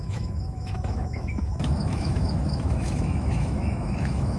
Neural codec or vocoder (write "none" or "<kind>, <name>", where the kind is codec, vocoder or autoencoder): autoencoder, DAC-VAE